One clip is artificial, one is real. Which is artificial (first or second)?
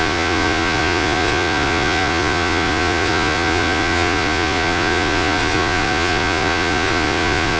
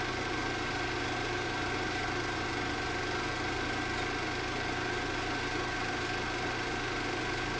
first